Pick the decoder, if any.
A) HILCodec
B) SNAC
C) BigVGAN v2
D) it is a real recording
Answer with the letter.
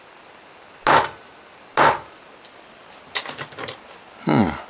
D